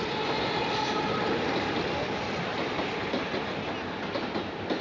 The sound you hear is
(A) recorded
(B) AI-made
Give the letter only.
A